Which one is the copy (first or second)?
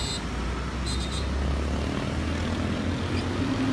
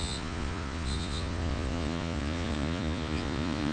second